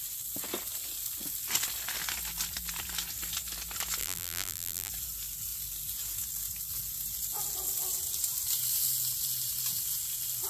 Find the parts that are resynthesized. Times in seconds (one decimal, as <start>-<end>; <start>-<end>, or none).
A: 4.0-4.9